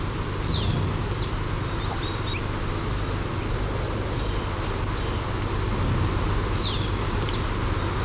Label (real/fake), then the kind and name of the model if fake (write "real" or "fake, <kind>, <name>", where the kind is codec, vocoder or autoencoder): real